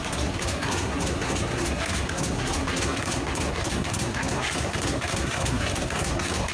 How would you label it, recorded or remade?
remade